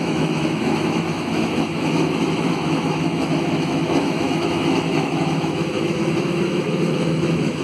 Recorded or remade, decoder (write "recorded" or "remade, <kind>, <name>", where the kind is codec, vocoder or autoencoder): remade, autoencoder, DAC-VAE